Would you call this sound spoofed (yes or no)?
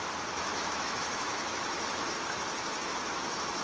yes